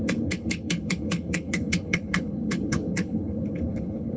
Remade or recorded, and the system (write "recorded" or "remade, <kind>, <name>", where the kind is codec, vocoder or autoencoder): remade, codec, HILCodec